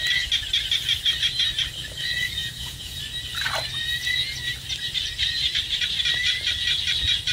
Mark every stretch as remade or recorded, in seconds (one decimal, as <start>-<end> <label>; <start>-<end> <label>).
0.0-2.4 recorded; 2.4-3.0 remade; 3.0-7.3 recorded